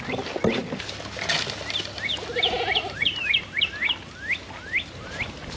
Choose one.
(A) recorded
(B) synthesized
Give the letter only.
A